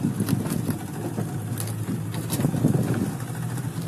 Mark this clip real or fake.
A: real